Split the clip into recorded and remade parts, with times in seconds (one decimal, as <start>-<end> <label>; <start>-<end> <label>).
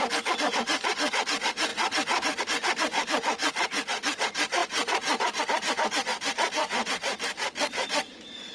0.0-1.7 remade; 1.7-2.4 recorded; 2.4-8.5 remade